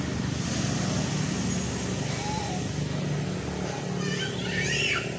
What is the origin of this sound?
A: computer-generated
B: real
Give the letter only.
B